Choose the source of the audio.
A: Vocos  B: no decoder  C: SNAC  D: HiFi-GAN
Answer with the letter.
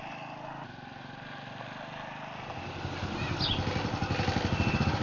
B